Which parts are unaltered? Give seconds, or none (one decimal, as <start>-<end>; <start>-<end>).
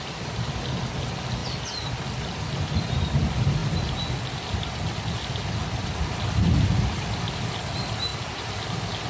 0.0-1.4; 2.0-8.1